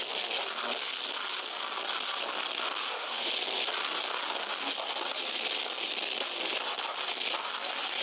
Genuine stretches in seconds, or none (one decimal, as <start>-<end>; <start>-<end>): 0.0-2.8; 3.3-8.0